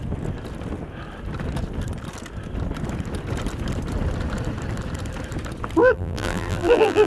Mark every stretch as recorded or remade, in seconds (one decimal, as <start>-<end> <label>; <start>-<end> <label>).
0.0-5.8 recorded; 5.8-7.1 remade